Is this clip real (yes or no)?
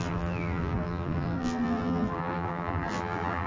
no